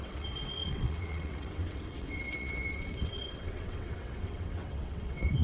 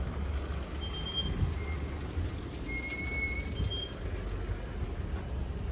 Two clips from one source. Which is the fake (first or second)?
first